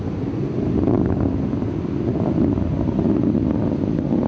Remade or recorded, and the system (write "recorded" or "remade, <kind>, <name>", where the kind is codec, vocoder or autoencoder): recorded